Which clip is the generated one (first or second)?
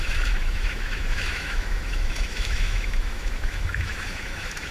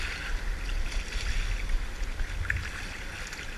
first